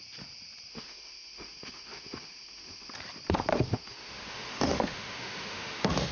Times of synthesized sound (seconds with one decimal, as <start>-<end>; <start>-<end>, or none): 0.7-2.9; 3.5-6.1